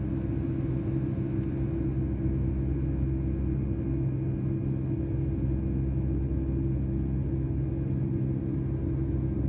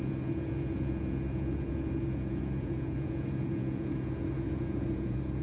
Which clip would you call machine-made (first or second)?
second